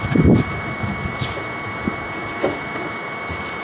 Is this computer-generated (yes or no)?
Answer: no